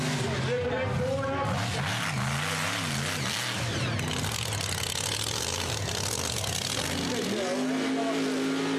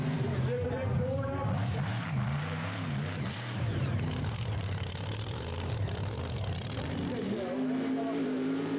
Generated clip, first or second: second